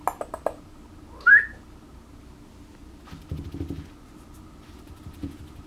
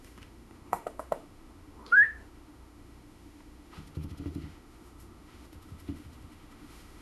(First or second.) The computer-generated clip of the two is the second